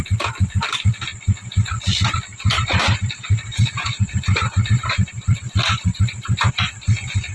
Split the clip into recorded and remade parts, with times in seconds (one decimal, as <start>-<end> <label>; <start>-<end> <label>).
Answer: 0.0-2.3 recorded; 2.3-6.7 remade; 6.7-7.3 recorded